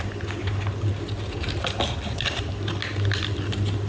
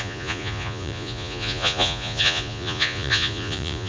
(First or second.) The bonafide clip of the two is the first